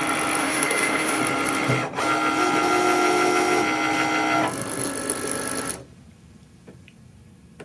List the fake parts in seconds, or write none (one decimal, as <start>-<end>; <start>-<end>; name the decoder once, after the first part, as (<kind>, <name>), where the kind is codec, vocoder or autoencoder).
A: 0.4-1.2 (autoencoder, DAC-VAE)

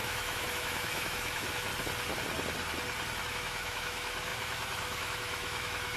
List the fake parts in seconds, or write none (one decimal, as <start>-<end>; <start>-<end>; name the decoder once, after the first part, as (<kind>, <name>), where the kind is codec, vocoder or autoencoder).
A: 0.0-1.7 (autoencoder, DAC-VAE); 3.2-6.0

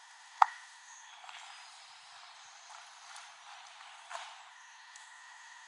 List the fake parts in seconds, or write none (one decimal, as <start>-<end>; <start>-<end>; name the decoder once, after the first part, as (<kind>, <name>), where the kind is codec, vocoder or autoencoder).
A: 0.0-1.1 (autoencoder, DAC-VAE); 4.5-5.7

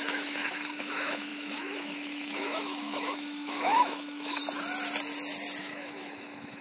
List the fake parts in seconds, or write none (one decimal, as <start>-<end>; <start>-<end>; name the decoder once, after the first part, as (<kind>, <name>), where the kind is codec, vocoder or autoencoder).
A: 0.0-4.4 (autoencoder, DAC-VAE); 5.6-6.6

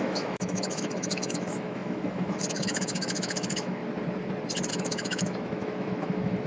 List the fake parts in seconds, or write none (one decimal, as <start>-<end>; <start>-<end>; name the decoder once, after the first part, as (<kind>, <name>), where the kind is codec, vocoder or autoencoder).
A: 0.0-3.8 (autoencoder, DAC-VAE); 4.7-6.5

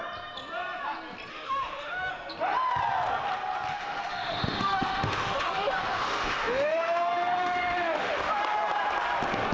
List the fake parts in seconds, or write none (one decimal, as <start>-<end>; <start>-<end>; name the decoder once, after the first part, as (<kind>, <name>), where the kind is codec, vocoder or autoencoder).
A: 1.3-2.1 (autoencoder, DAC-VAE); 3.7-8.4

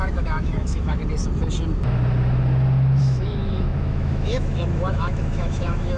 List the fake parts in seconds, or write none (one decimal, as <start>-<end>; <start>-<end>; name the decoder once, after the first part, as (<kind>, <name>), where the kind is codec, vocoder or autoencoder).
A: 0.0-1.0 (autoencoder, DAC-VAE); 3.0-6.0